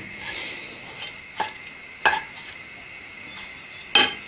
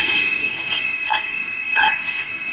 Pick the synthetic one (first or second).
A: second